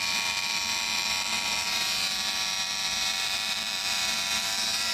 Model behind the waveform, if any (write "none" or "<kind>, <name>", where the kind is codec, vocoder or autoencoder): vocoder, BigVGAN v2